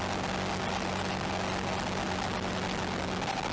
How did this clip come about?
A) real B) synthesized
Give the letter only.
A